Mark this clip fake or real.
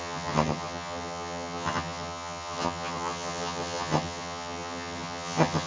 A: fake